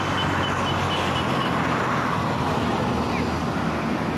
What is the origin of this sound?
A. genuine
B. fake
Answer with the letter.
A